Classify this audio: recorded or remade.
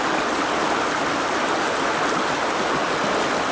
recorded